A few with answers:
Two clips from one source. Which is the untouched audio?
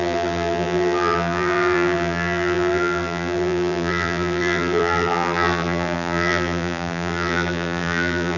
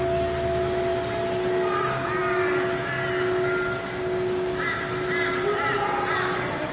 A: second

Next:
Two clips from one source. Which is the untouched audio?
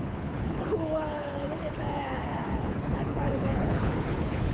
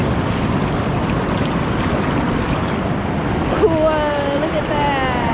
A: second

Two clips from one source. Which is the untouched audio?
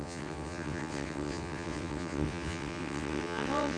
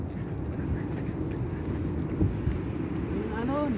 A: second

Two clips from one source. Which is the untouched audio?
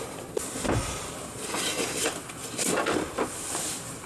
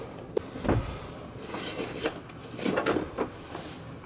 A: second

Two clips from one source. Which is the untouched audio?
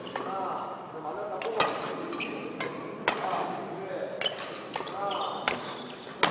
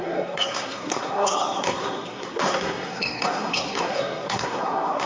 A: first